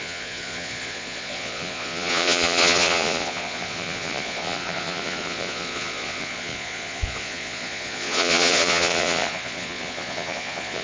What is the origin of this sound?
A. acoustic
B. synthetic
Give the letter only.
B